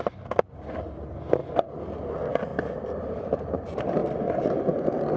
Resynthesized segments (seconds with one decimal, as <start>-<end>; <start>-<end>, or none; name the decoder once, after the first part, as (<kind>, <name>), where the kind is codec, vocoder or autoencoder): 1.4-2.1 (vocoder, BigVGAN v2)